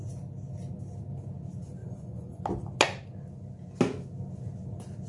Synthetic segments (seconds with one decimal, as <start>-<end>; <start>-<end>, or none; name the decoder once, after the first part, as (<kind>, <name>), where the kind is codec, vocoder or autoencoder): 1.8-2.4 (vocoder, Vocos)